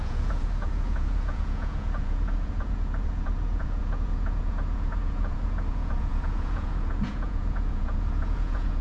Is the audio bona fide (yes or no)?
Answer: no